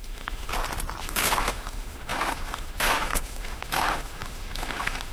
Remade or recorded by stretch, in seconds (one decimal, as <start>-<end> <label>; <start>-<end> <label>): 0.0-0.5 remade; 0.5-1.0 recorded; 1.0-5.1 remade